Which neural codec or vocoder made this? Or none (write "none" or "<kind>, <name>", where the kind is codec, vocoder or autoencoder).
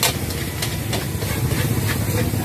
none